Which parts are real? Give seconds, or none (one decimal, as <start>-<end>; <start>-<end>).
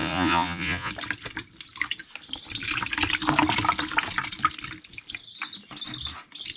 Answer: 0.9-6.6